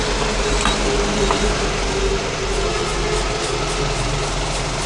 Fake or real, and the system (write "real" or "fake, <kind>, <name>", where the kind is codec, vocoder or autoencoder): real